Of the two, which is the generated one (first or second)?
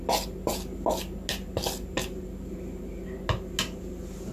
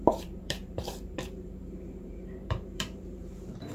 second